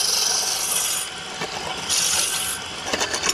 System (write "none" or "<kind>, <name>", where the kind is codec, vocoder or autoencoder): none